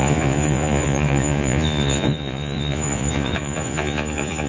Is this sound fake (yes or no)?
yes